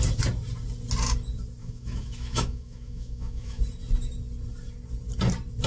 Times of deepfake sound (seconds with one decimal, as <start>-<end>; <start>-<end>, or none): 1.6-3.6